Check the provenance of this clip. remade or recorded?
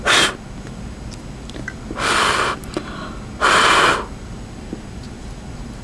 recorded